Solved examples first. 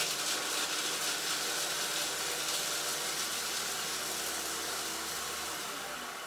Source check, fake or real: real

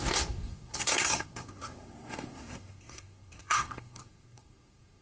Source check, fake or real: fake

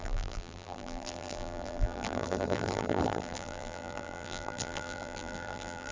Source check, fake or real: fake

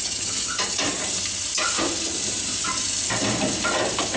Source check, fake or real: real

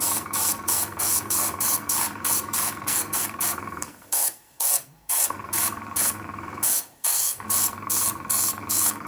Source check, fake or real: fake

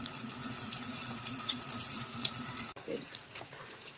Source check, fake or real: fake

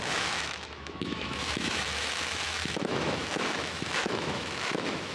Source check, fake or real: fake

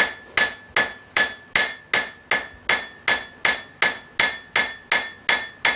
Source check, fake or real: real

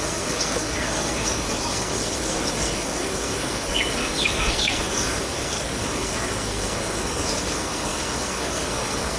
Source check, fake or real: fake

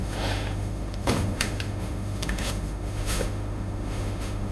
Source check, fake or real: fake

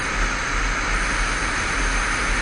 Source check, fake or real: real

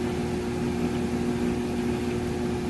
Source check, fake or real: real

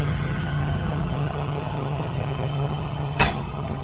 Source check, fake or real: fake